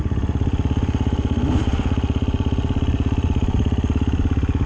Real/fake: real